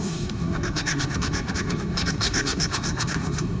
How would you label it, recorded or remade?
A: remade